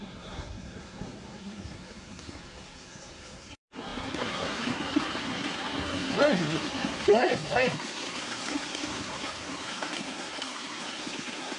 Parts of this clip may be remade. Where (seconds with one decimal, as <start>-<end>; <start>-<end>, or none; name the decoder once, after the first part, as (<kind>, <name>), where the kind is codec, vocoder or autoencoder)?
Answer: 0.0-11.6 (codec, SNAC)